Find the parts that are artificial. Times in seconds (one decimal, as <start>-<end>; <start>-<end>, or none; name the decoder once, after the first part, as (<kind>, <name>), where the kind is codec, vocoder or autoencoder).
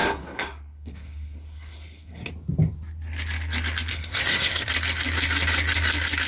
0.0-2.3 (codec, SNAC); 3.9-4.7